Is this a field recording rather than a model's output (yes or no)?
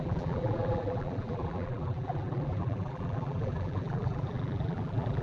no